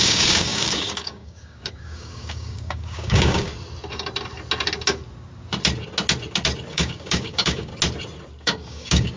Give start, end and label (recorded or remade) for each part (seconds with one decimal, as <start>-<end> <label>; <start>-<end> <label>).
0.0-3.5 remade; 3.5-6.7 recorded; 6.7-7.7 remade; 7.7-8.4 recorded; 8.4-9.2 remade